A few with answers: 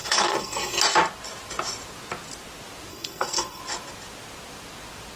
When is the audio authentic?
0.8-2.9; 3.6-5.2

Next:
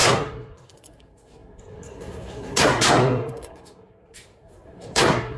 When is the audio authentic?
none

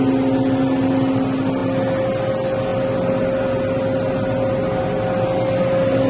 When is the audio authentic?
0.0-6.1

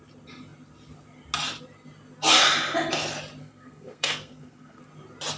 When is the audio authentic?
0.0-3.4; 4.8-5.4

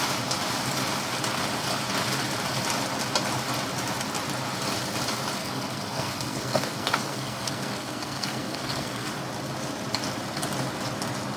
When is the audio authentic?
0.0-5.4; 9.1-11.4

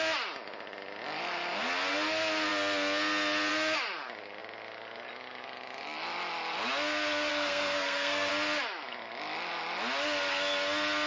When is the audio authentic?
0.0-7.3; 8.3-11.1

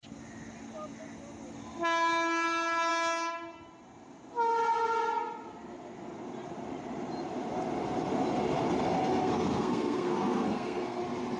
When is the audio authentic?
0.0-9.2; 11.0-11.4